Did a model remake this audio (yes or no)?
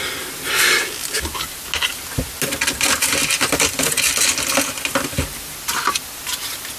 no